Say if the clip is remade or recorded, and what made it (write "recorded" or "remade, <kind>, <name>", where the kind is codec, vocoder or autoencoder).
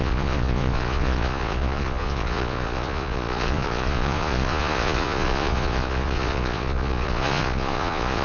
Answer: remade, vocoder, Vocos